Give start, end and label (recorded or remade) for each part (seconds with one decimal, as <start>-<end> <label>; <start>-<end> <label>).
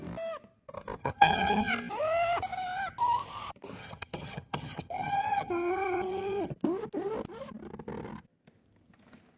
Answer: 0.0-1.0 recorded; 1.0-1.7 remade; 1.7-3.8 recorded; 3.8-6.5 remade; 6.5-9.4 recorded